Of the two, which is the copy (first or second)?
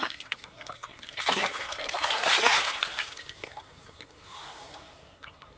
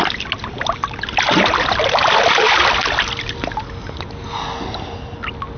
first